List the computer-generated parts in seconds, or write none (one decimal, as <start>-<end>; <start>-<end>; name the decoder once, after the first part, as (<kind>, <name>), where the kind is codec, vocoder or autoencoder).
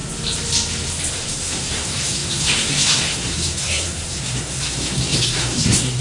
1.1-6.0 (codec, SNAC)